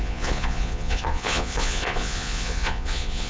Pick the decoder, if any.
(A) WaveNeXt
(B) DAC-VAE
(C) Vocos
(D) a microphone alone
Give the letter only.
C